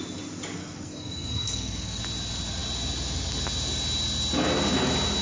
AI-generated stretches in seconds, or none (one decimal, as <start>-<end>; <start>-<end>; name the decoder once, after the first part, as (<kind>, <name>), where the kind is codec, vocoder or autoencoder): 0.6-2.0 (codec, SNAC)